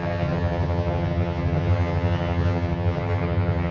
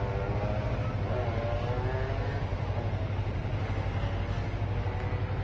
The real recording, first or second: second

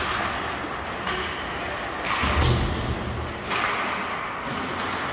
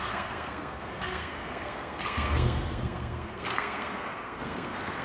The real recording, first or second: first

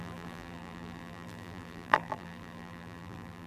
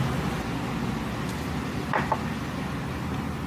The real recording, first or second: second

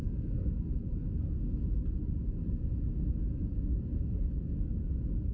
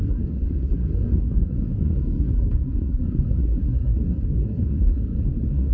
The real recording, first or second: first